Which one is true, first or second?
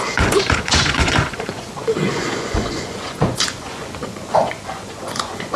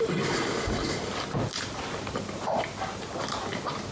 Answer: second